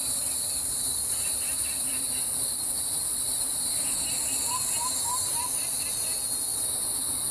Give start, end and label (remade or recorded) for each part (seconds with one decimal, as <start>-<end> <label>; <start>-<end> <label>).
0.0-0.9 recorded; 0.9-3.5 remade; 3.5-7.3 recorded